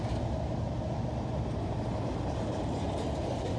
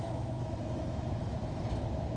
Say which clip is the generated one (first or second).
second